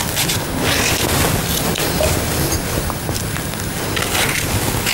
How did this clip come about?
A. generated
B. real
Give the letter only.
B